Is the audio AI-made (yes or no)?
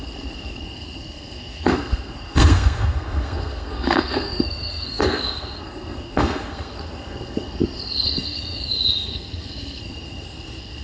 yes